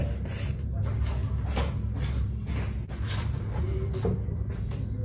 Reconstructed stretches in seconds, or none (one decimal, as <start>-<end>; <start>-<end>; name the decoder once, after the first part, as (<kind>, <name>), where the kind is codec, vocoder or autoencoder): none